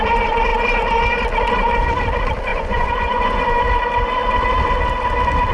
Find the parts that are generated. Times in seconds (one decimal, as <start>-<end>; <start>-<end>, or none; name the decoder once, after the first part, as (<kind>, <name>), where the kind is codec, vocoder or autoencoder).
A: 2.5-3.6 (vocoder, Vocos)